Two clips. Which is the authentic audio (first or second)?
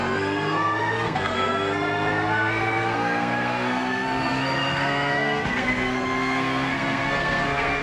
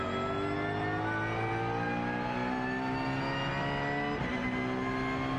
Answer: second